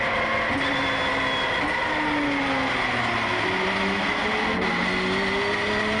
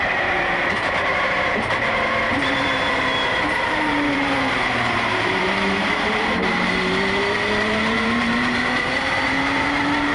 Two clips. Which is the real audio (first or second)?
first